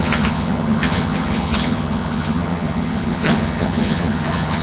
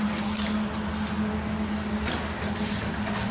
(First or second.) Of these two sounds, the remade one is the first